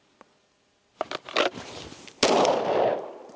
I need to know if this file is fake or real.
real